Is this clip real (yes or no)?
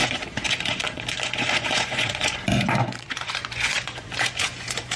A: no